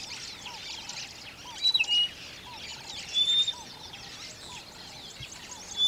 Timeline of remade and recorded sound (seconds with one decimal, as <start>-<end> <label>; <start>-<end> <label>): 0.0-2.7 recorded; 2.7-3.9 remade; 3.9-5.9 recorded